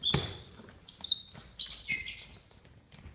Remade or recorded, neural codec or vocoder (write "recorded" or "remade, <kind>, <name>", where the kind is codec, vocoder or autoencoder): recorded